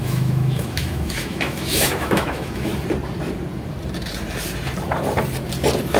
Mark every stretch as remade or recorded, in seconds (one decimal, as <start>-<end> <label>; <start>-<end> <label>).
0.0-2.7 remade; 2.7-6.0 recorded